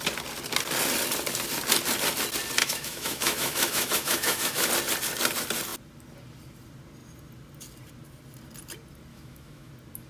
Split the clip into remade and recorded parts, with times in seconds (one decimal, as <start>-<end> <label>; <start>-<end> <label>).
0.0-2.6 recorded; 2.6-4.7 remade; 4.7-9.1 recorded; 9.1-9.7 remade; 9.7-10.1 recorded